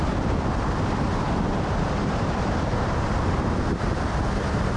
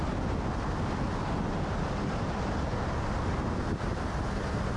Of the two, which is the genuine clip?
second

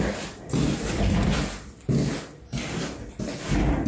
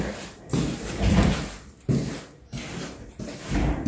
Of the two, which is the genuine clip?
first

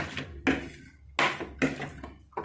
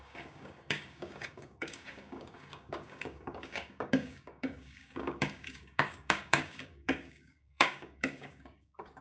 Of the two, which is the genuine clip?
first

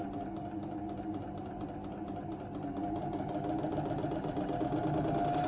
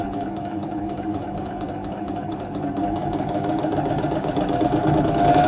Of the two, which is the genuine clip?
first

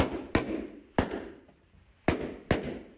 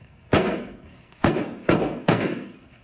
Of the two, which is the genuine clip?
first